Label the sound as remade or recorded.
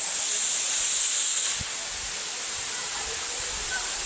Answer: recorded